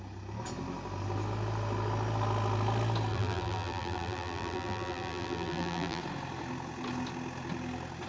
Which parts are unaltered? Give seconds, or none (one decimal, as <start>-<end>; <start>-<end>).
0.0-3.1; 6.0-8.1